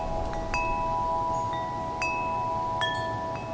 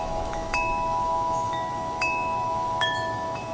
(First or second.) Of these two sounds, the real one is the first